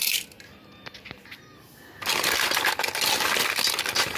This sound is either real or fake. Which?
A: real